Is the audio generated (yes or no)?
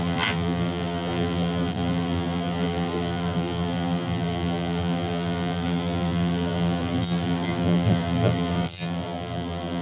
yes